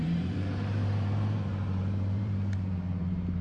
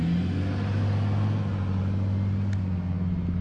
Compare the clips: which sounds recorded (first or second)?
second